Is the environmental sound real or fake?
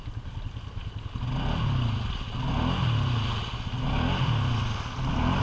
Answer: real